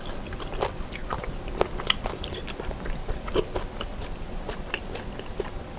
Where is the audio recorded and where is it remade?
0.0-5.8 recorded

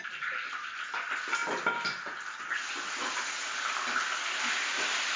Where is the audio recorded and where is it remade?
0.0-5.2 recorded